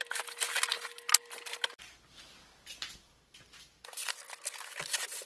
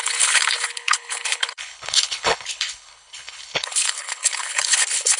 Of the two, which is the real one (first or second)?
first